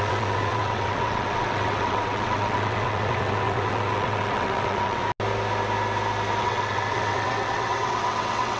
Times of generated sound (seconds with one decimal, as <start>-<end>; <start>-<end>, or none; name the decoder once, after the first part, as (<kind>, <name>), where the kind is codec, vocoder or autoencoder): 0.0-5.0 (vocoder, WaveNeXt); 6.4-8.6